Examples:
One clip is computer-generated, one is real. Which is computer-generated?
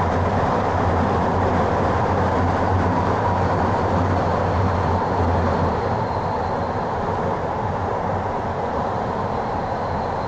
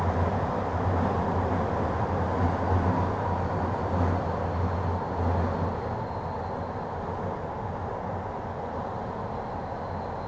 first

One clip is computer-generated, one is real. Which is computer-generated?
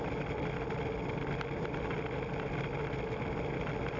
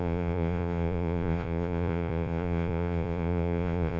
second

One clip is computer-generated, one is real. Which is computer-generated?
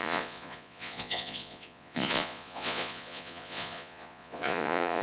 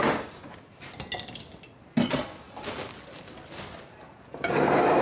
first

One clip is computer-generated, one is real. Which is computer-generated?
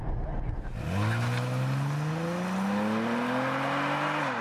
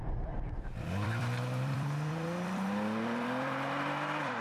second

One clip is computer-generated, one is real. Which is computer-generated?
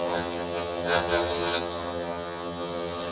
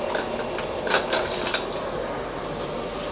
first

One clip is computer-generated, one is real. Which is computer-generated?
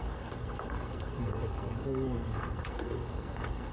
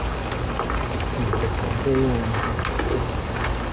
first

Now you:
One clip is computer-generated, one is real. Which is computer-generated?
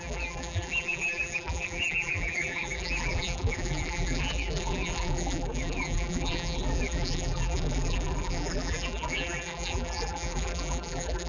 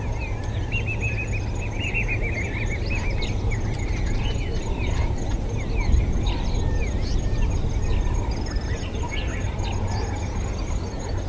first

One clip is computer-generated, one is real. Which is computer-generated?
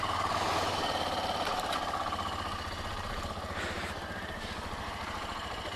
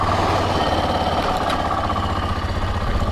first